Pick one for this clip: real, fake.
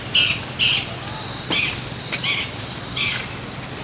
real